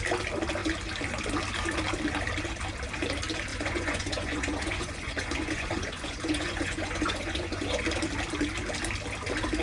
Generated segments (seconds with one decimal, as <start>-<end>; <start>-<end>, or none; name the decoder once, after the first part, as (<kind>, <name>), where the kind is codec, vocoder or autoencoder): 3.5-7.8 (vocoder, Vocos)